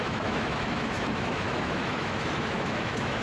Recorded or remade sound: remade